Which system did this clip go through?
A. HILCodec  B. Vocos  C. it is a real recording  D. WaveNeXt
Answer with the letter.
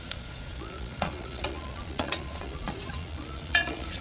B